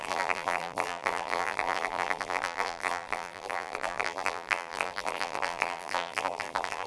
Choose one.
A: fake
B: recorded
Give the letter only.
A